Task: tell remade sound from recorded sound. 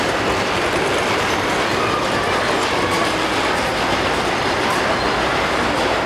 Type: recorded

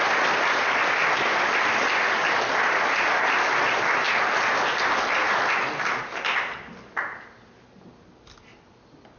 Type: recorded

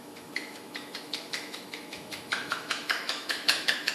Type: remade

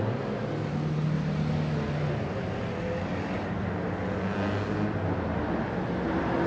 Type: recorded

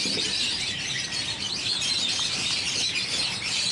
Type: recorded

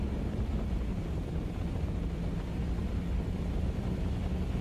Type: recorded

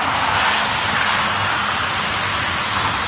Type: recorded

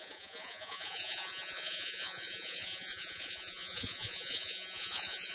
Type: remade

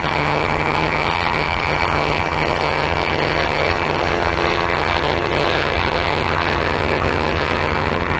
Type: remade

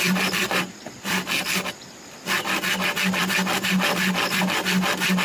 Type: recorded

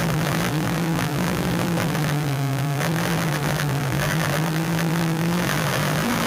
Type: remade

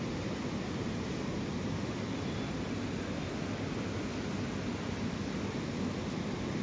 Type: recorded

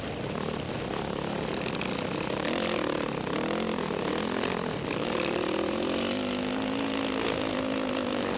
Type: recorded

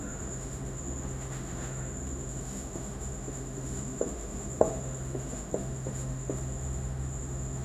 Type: remade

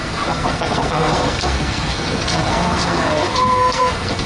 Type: remade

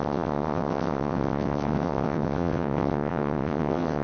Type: remade